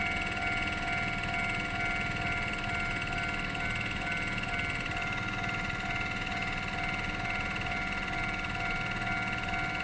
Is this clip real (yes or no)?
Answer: yes